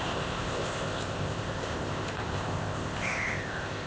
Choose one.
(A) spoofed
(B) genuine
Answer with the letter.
A